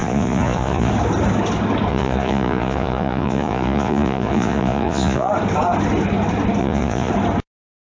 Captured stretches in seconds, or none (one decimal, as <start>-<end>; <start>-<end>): 0.9-1.9; 5.3-6.6; 7.1-7.9